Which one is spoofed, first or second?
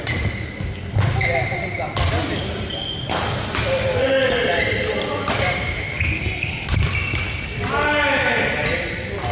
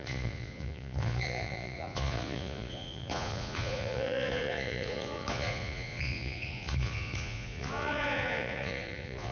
second